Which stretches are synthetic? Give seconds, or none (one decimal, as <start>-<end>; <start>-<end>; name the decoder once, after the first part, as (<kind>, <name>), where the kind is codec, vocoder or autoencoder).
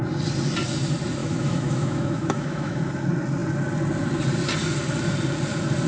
1.2-2.9 (autoencoder, DAC-VAE)